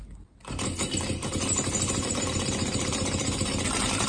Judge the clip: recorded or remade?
remade